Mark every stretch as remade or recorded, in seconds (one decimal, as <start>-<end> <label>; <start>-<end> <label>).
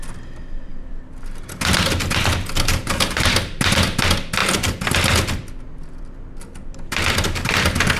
0.0-2.7 recorded; 2.7-3.8 remade; 3.8-8.0 recorded